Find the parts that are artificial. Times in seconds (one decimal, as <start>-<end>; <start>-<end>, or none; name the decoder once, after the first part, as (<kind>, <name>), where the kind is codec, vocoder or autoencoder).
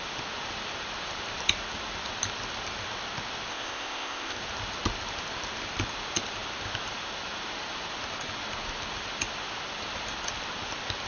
3.5-4.4 (codec, ZipCodec)